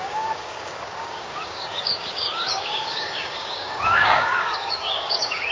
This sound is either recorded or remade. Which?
remade